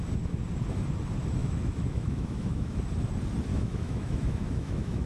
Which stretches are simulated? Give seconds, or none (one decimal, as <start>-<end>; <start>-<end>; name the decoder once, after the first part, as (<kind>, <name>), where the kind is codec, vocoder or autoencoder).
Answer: 1.4-2.8 (autoencoder, DAC-VAE); 3.5-5.1